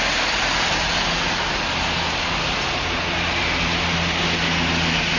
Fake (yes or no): no